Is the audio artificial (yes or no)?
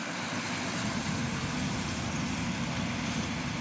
yes